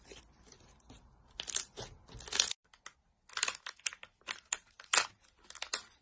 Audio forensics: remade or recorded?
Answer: recorded